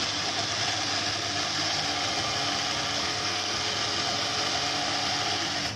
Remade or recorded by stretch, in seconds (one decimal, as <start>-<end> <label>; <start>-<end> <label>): 0.0-3.0 recorded; 3.0-3.6 remade; 3.6-5.8 recorded